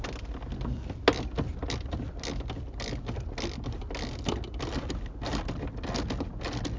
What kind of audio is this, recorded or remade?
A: recorded